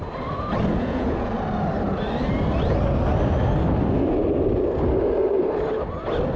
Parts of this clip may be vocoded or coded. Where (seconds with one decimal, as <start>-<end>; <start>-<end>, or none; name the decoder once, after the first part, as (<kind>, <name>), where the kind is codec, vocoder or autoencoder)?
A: 0.7-1.3 (vocoder, Vocos)